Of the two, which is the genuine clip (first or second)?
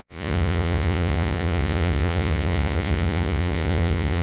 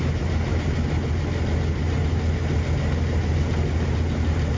second